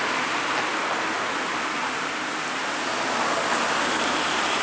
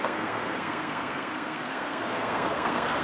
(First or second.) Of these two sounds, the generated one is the second